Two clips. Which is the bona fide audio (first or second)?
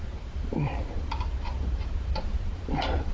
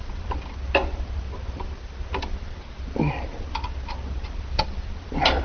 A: second